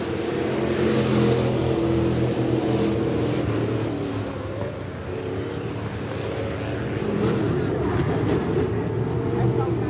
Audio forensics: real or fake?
real